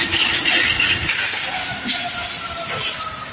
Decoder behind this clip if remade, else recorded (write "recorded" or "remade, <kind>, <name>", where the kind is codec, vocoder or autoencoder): recorded